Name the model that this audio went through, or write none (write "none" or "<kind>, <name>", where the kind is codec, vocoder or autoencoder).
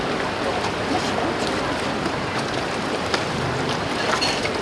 vocoder, BigVGAN v2